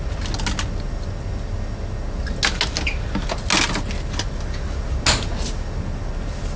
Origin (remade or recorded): recorded